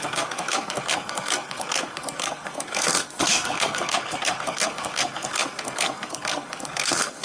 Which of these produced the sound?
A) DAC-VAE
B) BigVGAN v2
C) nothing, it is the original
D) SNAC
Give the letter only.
D